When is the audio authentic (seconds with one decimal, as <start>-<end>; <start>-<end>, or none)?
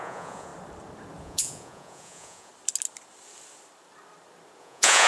0.5-1.2; 2.5-4.6